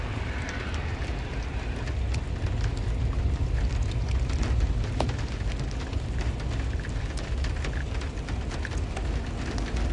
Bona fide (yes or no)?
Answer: yes